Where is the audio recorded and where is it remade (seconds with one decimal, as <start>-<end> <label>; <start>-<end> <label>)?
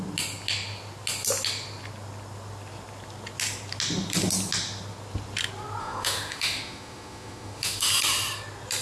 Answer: 0.0-5.8 recorded; 5.8-7.9 remade; 7.9-8.8 recorded